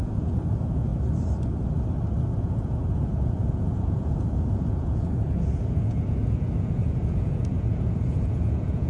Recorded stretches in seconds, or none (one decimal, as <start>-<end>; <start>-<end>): 0.9-2.4